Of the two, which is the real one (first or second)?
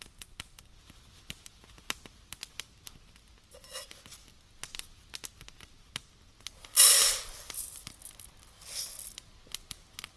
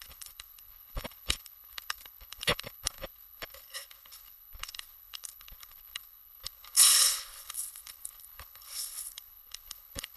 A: first